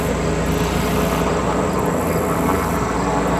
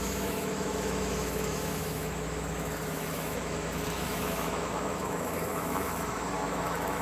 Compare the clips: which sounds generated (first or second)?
second